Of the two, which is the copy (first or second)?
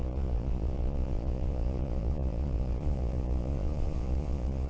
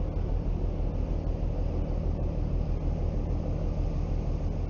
first